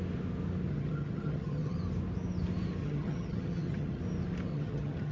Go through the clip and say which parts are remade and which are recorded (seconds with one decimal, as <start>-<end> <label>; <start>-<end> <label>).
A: 0.0-0.7 recorded; 0.7-1.8 remade; 1.8-2.8 recorded; 2.8-4.0 remade; 4.0-4.5 recorded; 4.5-5.1 remade